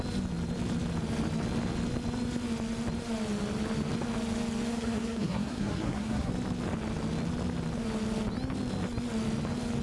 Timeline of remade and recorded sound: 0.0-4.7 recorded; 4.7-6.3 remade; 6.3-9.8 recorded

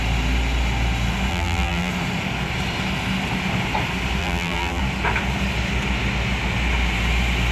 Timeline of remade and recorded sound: 0.0-1.3 recorded; 1.3-1.9 remade; 1.9-4.2 recorded; 4.2-4.8 remade; 4.8-7.5 recorded

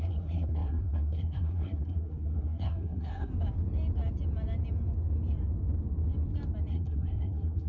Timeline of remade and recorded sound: 0.0-3.3 remade; 3.3-6.7 recorded; 6.7-7.7 remade

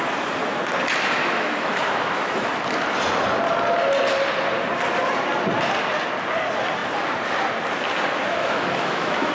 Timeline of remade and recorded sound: 0.0-1.2 recorded; 1.2-2.5 remade; 2.5-8.4 recorded; 8.4-9.3 remade

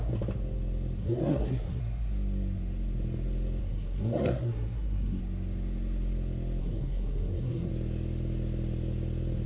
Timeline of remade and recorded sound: 0.0-1.0 recorded; 1.0-1.8 remade; 1.8-3.6 recorded; 3.6-5.2 remade; 5.2-6.6 recorded; 6.6-7.7 remade; 7.7-9.5 recorded